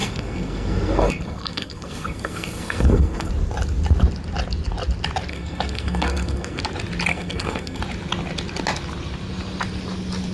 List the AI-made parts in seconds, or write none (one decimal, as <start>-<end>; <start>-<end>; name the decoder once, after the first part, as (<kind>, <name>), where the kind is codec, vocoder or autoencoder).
0.0-3.3 (codec, SNAC); 5.3-6.6; 7.1-7.8